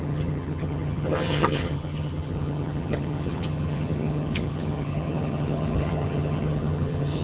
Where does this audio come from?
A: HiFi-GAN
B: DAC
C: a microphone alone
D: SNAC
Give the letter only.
A